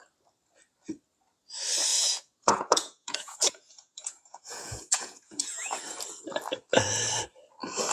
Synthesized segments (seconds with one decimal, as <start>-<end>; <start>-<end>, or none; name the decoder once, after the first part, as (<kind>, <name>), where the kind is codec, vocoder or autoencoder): 1.9-5.8 (vocoder, Vocos)